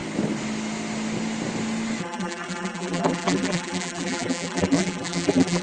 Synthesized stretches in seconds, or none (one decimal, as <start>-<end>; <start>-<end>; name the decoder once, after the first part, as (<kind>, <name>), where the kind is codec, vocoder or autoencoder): 2.0-5.6 (vocoder, BigVGAN v2)